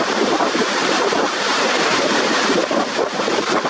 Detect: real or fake fake